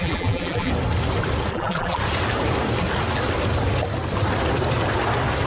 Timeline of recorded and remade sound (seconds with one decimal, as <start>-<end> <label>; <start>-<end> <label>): 0.0-0.7 remade; 0.7-1.5 recorded; 1.5-2.0 remade; 2.0-5.5 recorded